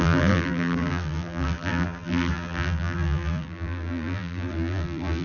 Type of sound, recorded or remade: remade